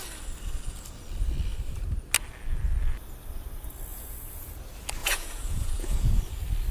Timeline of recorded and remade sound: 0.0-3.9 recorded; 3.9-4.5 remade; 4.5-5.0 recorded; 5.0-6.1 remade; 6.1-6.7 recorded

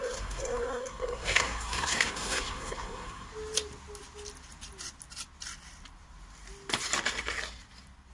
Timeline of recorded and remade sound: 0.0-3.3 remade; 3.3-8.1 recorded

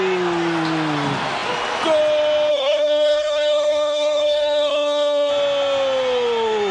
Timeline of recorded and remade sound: 0.0-2.5 recorded; 2.5-5.3 remade; 5.3-6.7 recorded

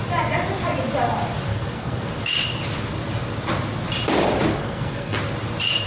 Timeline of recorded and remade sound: 0.0-1.5 recorded; 1.5-2.1 remade; 2.1-4.5 recorded; 4.5-5.2 remade; 5.2-5.9 recorded

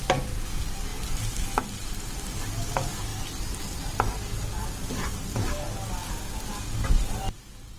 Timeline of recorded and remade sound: 0.0-7.8 recorded

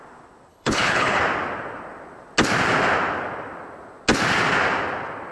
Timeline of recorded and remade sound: 0.0-0.5 recorded; 0.5-1.2 remade; 1.2-5.3 recorded

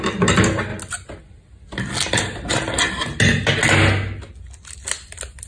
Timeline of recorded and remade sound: 0.0-5.5 recorded

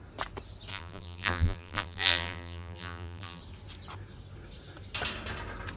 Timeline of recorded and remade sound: 0.0-0.7 recorded; 0.7-3.4 remade; 3.4-5.8 recorded